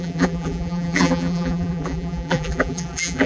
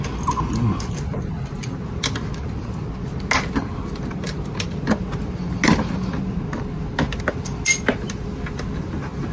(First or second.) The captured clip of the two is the second